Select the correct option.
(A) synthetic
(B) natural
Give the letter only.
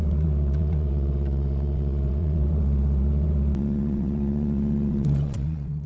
A